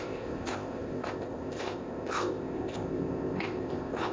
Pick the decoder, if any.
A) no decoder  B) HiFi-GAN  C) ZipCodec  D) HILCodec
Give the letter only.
C